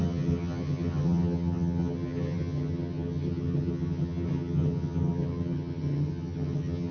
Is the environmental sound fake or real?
fake